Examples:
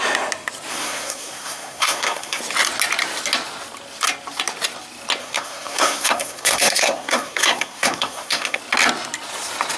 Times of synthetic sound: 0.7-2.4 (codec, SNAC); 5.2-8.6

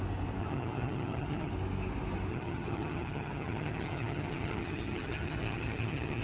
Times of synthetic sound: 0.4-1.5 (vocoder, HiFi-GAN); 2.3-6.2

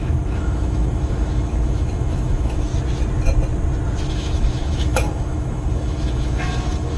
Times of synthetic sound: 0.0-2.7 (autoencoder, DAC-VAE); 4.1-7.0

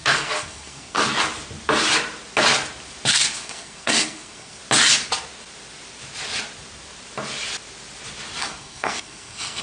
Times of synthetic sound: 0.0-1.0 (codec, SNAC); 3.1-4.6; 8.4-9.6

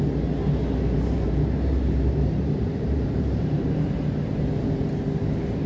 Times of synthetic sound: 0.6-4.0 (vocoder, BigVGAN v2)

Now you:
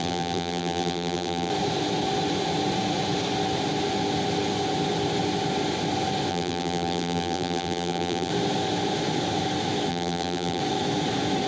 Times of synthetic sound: 0.0-1.5 (vocoder, BigVGAN v2); 6.3-8.3; 9.9-10.6

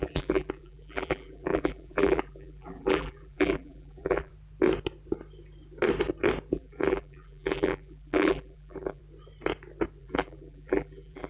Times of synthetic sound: 0.0-4.3 (vocoder, BigVGAN v2); 6.5-9.0; 10.0-11.3